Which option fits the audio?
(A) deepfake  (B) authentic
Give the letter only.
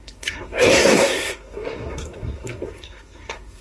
A